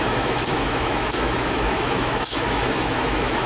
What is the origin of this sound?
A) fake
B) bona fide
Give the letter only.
A